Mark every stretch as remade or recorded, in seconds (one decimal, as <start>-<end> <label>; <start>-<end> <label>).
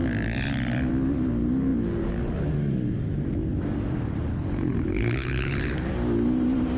0.0-4.3 recorded; 4.3-5.9 remade; 5.9-6.8 recorded